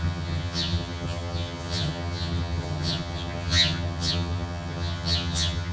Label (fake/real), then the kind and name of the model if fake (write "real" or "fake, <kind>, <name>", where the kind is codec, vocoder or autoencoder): fake, vocoder, HiFi-GAN